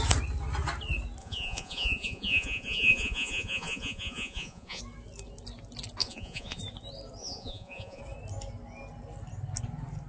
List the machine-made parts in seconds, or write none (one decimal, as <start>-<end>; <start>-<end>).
1.2-4.8; 6.0-6.6; 7.2-8.0